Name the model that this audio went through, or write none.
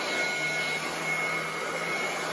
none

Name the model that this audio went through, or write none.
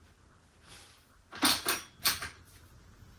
none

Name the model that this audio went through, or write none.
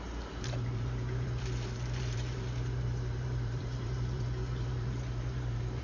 vocoder, BigVGAN v2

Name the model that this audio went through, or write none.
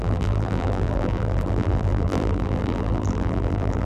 vocoder, BigVGAN v2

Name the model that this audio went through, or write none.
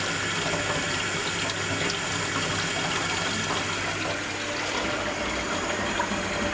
none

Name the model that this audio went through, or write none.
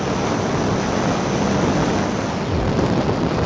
none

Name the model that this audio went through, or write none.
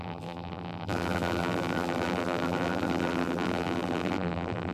vocoder, BigVGAN v2